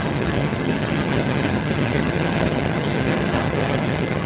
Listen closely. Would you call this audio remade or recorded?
remade